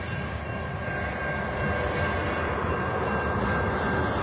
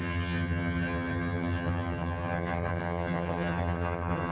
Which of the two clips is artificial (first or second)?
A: second